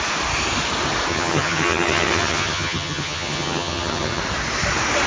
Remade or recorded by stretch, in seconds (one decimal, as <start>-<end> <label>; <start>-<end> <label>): 0.0-1.1 recorded; 1.1-4.2 remade; 4.2-5.1 recorded